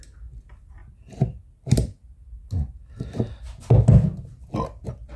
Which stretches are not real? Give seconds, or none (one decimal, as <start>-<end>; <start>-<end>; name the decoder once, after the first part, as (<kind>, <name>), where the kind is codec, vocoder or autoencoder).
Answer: none